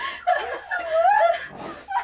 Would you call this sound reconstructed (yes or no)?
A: no